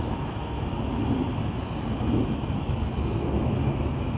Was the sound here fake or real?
fake